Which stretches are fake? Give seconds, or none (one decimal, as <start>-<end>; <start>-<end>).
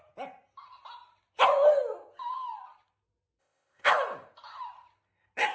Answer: 3.4-3.9